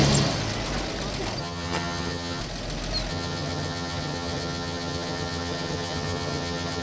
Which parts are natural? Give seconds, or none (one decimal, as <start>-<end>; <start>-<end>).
0.0-1.4; 2.4-3.1